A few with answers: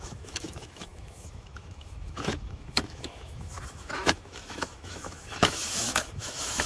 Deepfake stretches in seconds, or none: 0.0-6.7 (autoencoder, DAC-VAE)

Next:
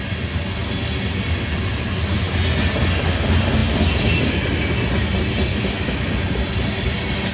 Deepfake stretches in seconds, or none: 5.5-6.1 (autoencoder, DAC-VAE)

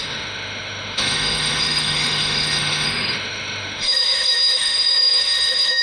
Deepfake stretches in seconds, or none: 0.0-5.8 (autoencoder, DAC-VAE)

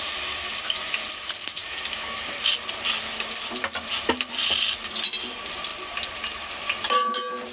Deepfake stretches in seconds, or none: 1.6-2.4 (autoencoder, DAC-VAE)

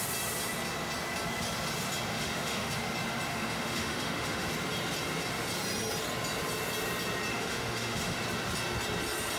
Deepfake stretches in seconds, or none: 2.1-2.7 (autoencoder, DAC-VAE); 3.3-4.5; 7.3-8.2